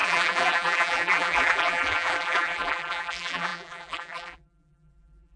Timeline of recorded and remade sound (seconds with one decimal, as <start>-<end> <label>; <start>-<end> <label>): 0.0-5.4 remade